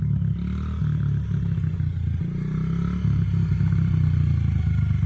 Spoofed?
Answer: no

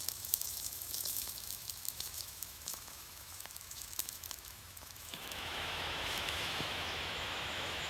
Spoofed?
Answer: yes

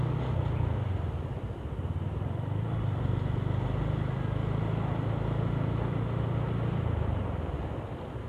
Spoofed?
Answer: no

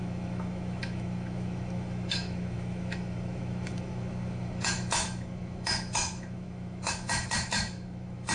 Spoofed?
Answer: yes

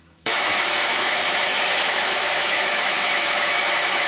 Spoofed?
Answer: yes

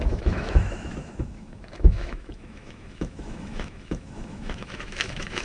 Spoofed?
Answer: yes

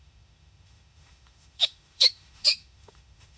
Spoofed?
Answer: yes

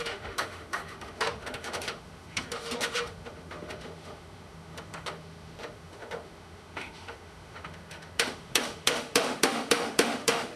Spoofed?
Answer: yes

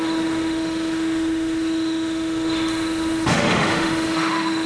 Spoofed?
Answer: yes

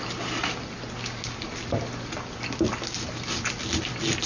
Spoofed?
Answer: no